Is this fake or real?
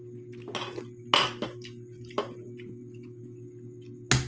real